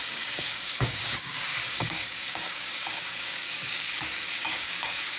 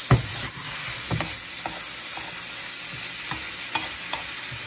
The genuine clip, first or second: second